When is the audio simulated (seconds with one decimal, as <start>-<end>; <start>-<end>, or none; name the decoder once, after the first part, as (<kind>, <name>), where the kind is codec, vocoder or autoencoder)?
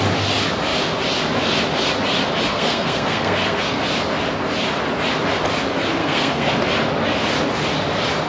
2.5-3.8 (codec, SNAC); 6.0-6.5